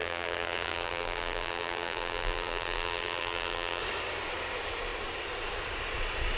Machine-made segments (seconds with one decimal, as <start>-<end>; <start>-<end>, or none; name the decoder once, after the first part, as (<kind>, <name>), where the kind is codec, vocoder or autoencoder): 0.0-3.8 (vocoder, BigVGAN v2)